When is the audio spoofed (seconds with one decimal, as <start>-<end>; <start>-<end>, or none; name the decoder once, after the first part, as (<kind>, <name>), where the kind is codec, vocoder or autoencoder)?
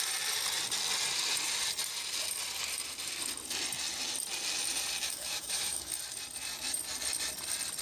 5.0-5.9 (autoencoder, DAC-VAE)